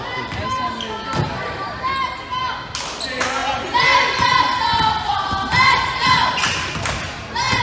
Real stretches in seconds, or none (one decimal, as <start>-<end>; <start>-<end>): 0.0-7.6